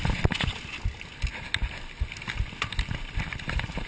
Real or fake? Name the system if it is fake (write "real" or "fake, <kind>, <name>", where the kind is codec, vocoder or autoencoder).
real